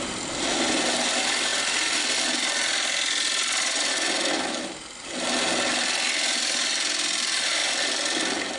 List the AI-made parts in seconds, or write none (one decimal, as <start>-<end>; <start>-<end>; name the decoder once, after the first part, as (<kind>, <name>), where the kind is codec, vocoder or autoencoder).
none